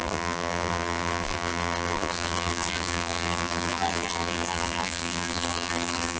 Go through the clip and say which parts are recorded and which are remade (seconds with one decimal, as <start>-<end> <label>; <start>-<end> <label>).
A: 0.0-6.2 remade